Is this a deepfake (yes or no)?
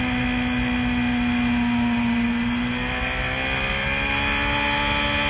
no